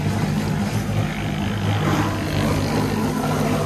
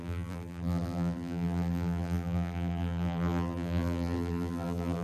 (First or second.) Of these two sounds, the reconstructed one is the second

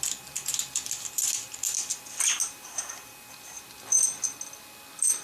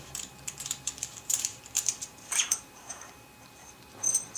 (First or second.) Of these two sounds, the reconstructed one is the second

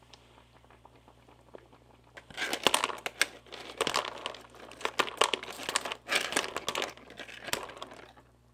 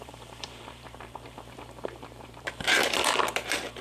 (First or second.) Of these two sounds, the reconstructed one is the second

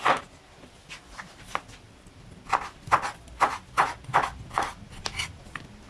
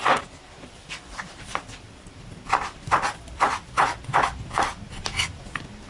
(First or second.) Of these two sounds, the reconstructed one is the second